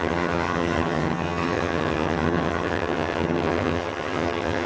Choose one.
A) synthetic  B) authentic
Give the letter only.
A